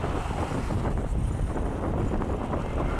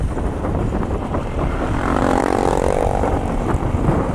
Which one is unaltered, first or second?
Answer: first